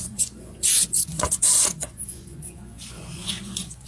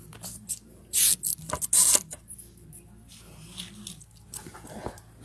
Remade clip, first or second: first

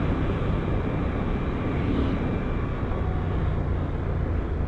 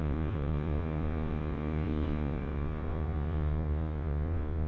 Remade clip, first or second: second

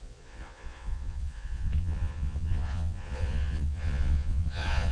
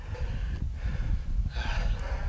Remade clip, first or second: first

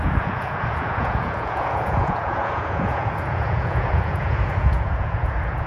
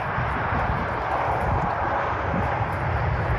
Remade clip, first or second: first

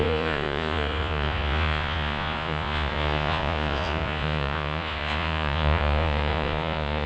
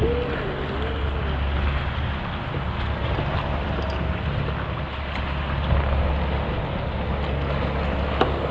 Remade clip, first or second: first